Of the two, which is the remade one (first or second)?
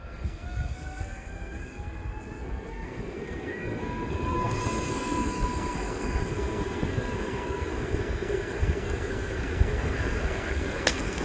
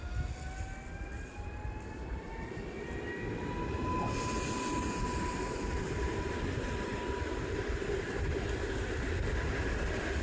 first